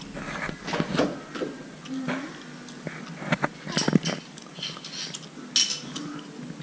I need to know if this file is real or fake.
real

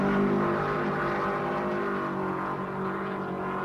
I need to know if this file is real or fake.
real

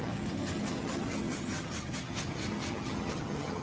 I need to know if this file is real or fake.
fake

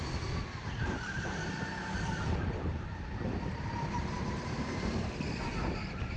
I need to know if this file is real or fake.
real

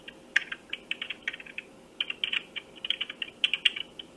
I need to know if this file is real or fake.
real